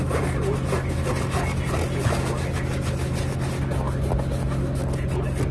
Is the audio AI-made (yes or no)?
no